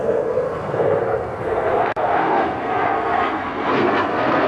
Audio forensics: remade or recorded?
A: remade